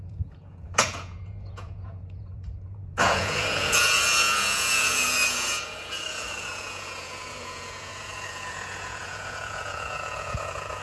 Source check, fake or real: fake